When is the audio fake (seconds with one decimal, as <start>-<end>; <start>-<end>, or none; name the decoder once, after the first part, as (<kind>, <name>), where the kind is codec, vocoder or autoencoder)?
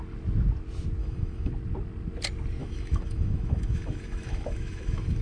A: 1.0-1.5 (autoencoder, DAC-VAE); 2.6-5.2